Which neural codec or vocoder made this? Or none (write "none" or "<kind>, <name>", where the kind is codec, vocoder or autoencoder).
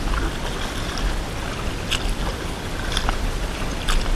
none